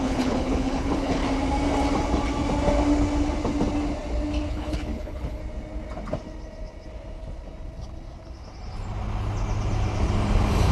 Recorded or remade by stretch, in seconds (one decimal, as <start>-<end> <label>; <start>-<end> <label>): 0.0-1.2 remade; 1.2-4.5 recorded; 4.5-5.4 remade; 5.4-10.7 recorded